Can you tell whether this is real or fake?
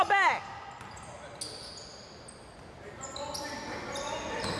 real